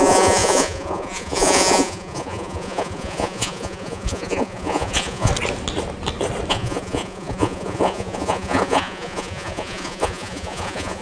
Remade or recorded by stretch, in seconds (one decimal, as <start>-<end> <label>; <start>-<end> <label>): 0.0-5.3 remade; 5.3-6.5 recorded; 6.5-11.0 remade